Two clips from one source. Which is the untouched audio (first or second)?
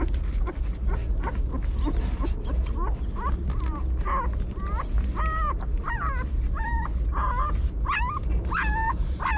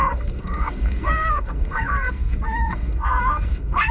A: first